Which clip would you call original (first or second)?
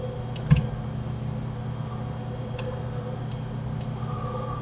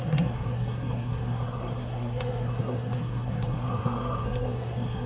first